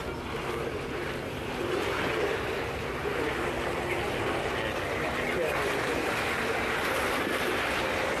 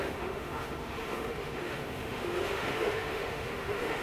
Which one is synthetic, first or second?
second